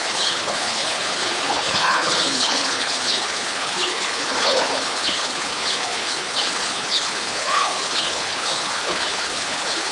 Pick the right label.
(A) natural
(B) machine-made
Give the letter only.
B